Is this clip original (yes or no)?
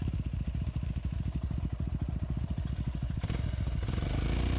yes